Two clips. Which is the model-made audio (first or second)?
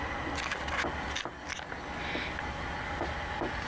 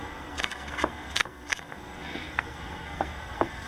second